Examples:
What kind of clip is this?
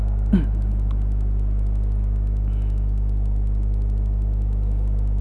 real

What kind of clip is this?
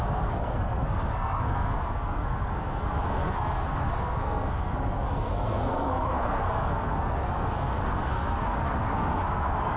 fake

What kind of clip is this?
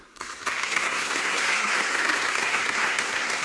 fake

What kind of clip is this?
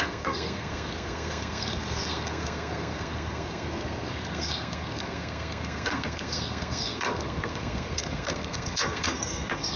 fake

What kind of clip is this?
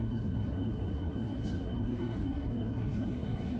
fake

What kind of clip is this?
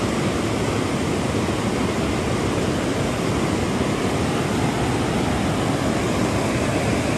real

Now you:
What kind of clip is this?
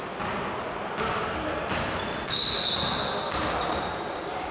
real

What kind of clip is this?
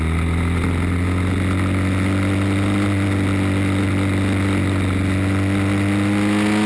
real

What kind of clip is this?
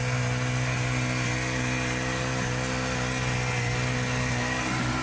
real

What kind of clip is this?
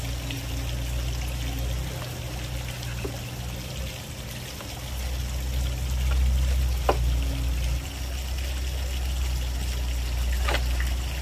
real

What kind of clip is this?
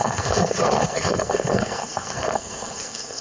fake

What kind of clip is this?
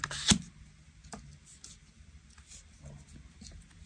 real